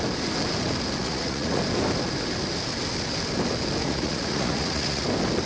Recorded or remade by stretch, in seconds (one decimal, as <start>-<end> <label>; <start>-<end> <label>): 0.0-1.0 recorded; 1.0-1.6 remade; 1.6-3.8 recorded; 3.8-5.0 remade; 5.0-5.5 recorded